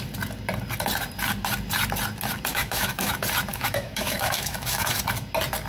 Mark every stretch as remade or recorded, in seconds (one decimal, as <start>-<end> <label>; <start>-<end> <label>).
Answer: 0.0-2.5 recorded; 2.5-3.1 remade; 3.1-3.5 recorded; 3.5-5.0 remade; 5.0-5.7 recorded